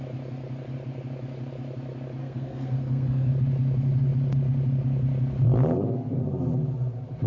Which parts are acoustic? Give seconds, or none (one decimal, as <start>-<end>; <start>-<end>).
0.0-2.2; 3.3-7.3